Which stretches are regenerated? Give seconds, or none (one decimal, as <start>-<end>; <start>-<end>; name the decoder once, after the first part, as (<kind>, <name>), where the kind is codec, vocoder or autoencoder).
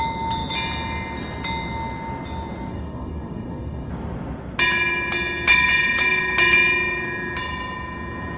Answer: 2.7-3.9 (codec, DAC)